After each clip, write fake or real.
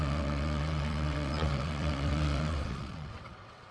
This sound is fake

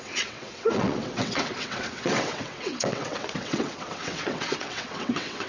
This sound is fake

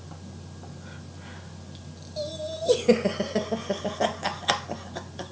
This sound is real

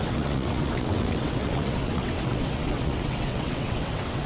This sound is fake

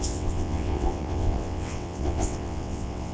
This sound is fake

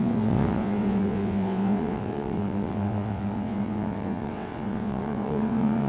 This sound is fake